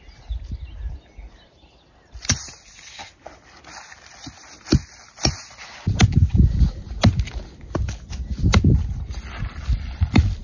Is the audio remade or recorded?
recorded